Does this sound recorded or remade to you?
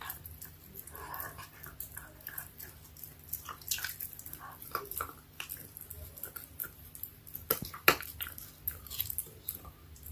recorded